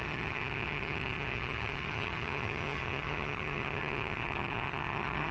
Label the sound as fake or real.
fake